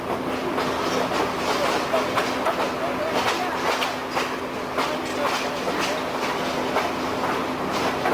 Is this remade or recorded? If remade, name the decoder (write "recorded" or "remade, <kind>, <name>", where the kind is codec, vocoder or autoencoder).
recorded